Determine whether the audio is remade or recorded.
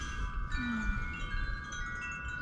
recorded